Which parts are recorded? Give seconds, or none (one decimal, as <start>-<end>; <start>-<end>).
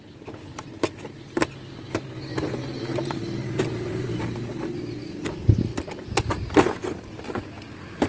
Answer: 0.0-0.5; 2.1-3.4; 4.2-8.1